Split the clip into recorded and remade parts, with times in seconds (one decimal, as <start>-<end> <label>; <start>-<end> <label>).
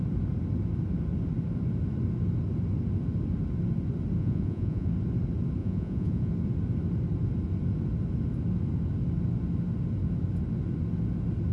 0.0-4.2 recorded; 4.2-4.9 remade; 4.9-5.6 recorded; 5.6-6.3 remade; 6.3-11.5 recorded